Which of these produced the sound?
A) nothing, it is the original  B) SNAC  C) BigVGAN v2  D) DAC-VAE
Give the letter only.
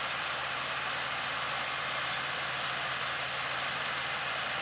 C